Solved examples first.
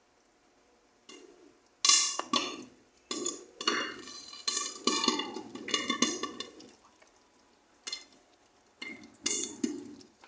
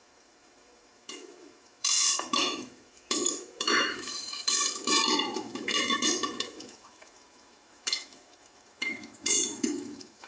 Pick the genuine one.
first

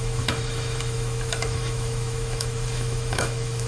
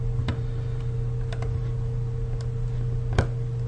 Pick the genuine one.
second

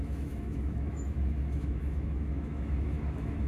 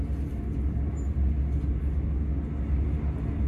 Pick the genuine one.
second